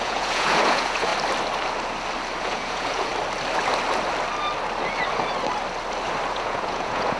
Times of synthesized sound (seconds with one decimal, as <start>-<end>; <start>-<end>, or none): 0.0-1.1; 2.4-3.1; 6.3-7.2